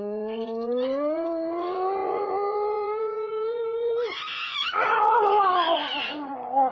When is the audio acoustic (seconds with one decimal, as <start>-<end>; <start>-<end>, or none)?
none